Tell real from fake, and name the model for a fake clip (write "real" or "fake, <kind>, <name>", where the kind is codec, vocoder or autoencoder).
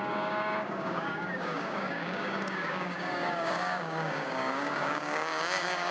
fake, codec, DAC